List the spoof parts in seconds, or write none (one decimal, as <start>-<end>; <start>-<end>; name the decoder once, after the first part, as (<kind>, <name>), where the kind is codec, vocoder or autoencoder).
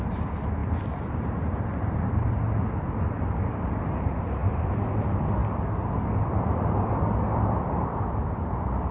0.0-4.4 (vocoder, BigVGAN v2); 5.0-8.9